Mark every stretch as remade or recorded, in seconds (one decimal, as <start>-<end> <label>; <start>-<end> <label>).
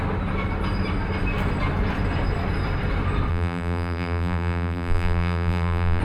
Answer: 0.0-3.3 recorded; 3.3-6.0 remade